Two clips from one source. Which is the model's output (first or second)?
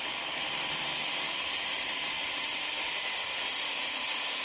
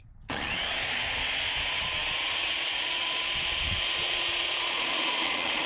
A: second